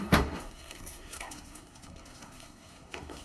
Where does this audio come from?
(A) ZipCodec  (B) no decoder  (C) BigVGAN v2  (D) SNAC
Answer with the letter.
D